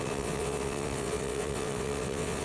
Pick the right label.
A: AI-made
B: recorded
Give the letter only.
A